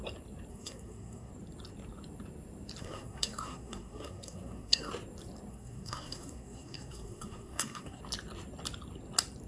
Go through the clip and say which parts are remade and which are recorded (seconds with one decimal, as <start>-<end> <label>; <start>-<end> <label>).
0.0-0.5 recorded; 0.5-1.3 remade; 1.3-2.8 recorded; 2.8-4.9 remade; 4.9-5.5 recorded; 5.5-8.0 remade; 8.0-9.5 recorded